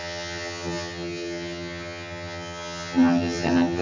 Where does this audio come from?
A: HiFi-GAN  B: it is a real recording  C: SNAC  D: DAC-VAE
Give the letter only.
A